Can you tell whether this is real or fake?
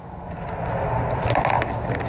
real